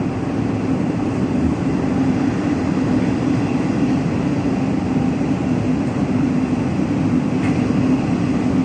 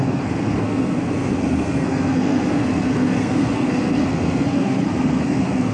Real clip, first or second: first